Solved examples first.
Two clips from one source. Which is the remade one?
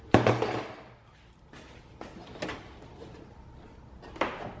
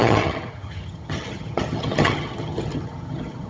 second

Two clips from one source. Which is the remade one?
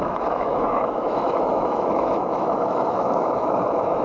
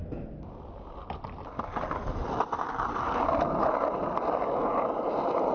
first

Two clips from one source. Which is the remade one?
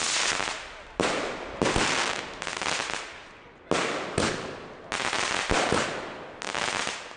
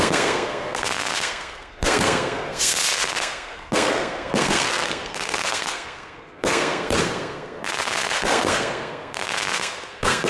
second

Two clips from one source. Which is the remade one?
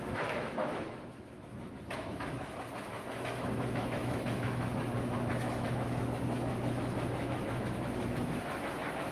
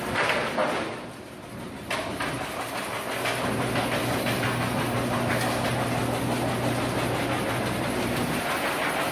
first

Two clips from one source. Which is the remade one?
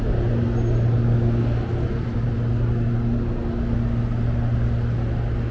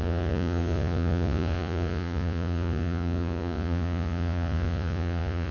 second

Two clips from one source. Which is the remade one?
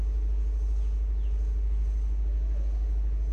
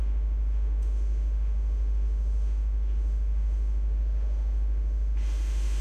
second